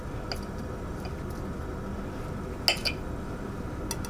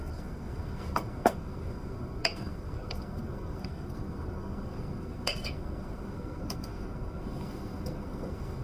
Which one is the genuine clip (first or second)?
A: first